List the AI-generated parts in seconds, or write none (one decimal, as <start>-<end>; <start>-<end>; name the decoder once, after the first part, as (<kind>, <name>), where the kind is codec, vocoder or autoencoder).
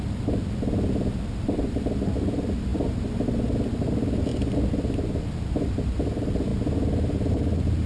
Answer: 0.0-2.7 (vocoder, BigVGAN v2); 3.7-7.9